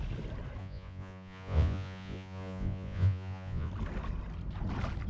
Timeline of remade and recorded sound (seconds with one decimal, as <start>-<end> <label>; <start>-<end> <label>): 0.0-0.6 recorded; 0.6-3.7 remade; 3.7-5.1 recorded